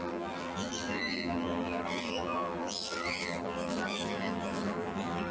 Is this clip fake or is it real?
fake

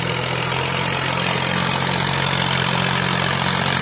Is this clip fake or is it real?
real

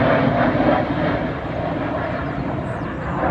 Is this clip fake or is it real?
real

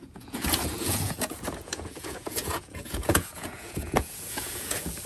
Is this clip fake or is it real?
fake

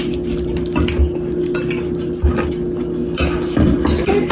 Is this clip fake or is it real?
real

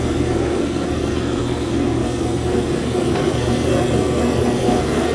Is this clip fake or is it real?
fake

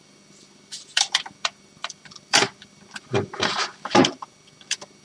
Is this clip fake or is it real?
fake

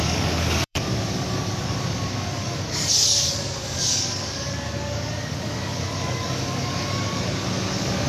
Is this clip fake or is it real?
fake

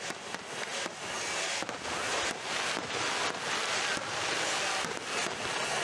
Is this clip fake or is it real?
real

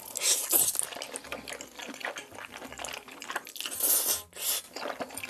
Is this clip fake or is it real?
real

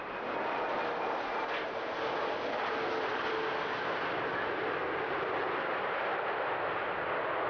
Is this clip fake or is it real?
real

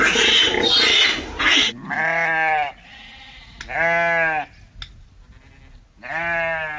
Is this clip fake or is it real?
real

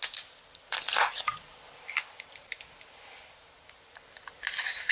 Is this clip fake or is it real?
real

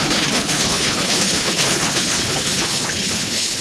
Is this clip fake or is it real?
fake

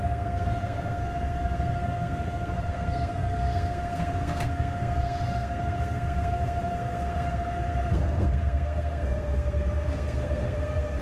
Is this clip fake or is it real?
fake